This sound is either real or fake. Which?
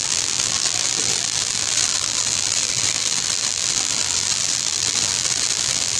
fake